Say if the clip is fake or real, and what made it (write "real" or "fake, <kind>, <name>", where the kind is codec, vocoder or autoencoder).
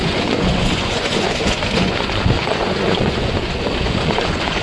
fake, vocoder, Vocos